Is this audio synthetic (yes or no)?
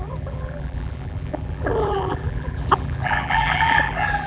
yes